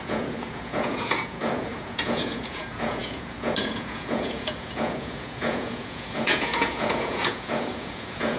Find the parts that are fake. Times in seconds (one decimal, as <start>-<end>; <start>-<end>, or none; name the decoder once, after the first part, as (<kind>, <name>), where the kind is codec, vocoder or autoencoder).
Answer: 0.0-8.4 (vocoder, Vocos)